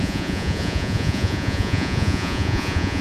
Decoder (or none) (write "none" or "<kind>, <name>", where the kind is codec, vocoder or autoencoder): vocoder, Vocos